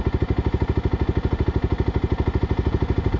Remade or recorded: recorded